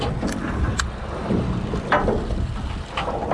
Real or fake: real